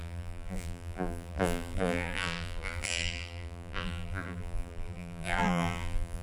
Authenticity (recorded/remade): remade